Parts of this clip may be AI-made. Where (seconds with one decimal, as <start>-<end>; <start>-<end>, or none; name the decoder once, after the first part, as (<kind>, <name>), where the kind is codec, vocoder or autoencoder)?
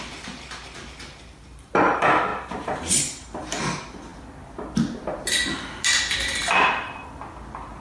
none